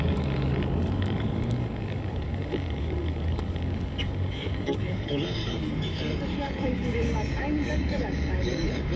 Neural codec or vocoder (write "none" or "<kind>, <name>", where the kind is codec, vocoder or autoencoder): codec, DAC